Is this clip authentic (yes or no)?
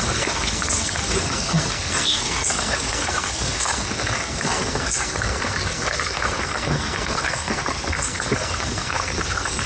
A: no